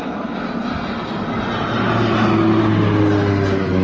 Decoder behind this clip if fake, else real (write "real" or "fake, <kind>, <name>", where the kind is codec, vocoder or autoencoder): real